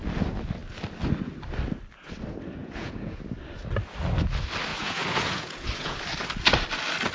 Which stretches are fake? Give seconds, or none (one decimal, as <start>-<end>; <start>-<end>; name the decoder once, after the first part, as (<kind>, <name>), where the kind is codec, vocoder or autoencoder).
2.6-3.2 (vocoder, Vocos); 4.7-6.0